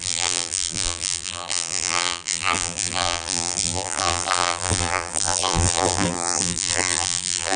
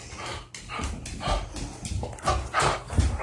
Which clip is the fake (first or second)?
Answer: first